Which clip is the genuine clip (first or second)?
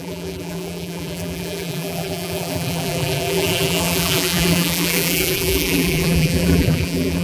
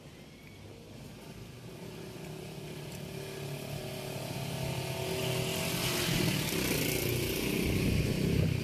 second